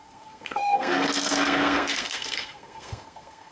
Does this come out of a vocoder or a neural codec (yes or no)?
yes